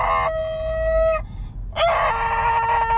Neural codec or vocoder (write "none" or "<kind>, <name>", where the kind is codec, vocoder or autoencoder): none